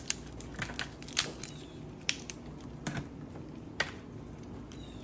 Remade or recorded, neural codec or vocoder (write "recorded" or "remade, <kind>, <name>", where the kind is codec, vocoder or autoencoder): recorded